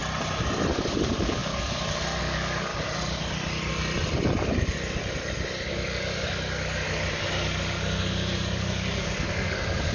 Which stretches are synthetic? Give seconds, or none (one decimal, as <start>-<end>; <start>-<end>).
0.7-2.7; 5.7-9.9